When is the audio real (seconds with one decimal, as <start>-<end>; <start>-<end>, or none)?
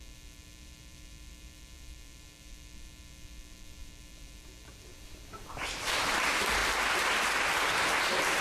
6.6-8.0